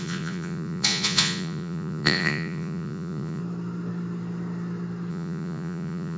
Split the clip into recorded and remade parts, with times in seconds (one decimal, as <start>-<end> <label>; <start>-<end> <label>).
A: 0.0-3.4 remade; 3.4-5.1 recorded; 5.1-6.2 remade